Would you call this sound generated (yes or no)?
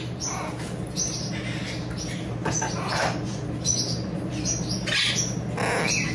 no